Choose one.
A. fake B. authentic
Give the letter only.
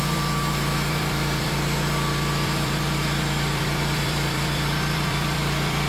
A